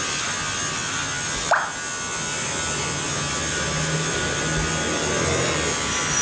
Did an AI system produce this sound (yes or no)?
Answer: no